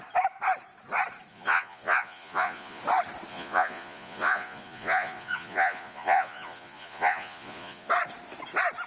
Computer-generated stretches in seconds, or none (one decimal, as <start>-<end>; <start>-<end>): 1.3-2.8; 3.3-7.9

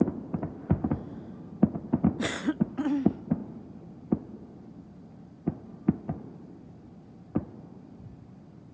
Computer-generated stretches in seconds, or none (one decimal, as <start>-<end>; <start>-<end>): none